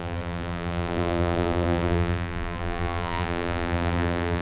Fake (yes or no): yes